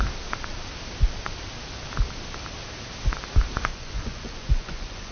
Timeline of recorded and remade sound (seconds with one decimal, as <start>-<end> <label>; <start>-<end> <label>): 0.0-3.7 recorded; 3.7-5.1 remade